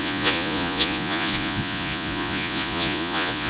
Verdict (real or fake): fake